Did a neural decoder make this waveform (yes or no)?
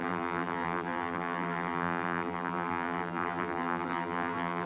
yes